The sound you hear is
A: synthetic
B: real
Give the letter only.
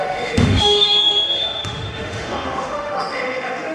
A